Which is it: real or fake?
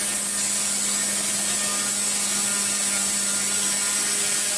real